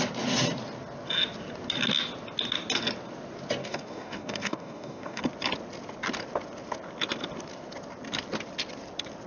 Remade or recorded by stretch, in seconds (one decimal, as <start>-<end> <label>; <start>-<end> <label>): 0.0-3.6 recorded; 3.6-5.2 remade; 5.2-9.3 recorded